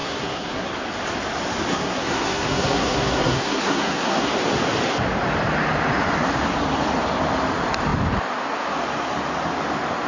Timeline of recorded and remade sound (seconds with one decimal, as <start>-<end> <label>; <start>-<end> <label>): 0.0-0.7 remade; 0.7-1.7 recorded; 1.7-4.3 remade; 4.3-10.1 recorded

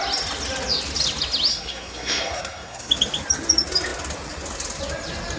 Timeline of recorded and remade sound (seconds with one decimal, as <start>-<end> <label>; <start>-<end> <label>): 0.0-1.5 recorded; 1.5-2.9 remade; 2.9-5.4 recorded

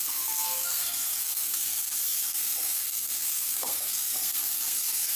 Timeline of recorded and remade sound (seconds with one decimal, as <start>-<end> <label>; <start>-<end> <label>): 0.0-5.2 remade

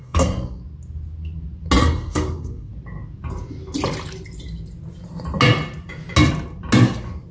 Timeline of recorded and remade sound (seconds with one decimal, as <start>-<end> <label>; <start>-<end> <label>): 0.0-0.6 remade; 0.6-1.8 recorded; 1.8-2.7 remade; 2.7-7.3 recorded

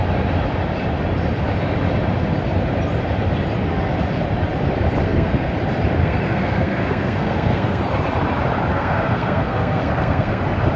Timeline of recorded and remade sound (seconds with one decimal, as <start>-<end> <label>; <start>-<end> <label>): 0.0-5.0 recorded; 5.0-5.5 remade; 5.5-6.0 recorded; 6.0-7.8 remade; 7.8-8.7 recorded; 8.7-10.4 remade; 10.4-10.8 recorded

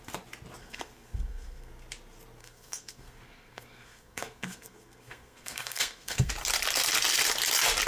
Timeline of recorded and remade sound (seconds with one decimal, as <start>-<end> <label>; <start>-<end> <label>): 0.0-0.6 recorded; 0.6-1.7 remade; 1.7-2.4 recorded; 2.4-6.3 remade; 6.3-7.9 recorded